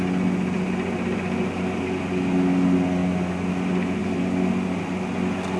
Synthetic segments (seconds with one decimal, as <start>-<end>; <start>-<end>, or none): none